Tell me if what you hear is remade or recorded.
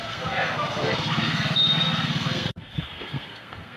remade